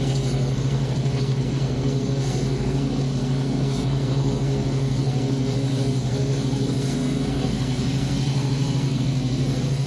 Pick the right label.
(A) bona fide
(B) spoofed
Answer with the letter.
B